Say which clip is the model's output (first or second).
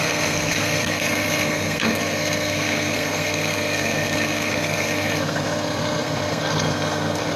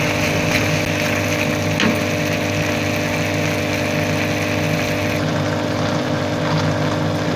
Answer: first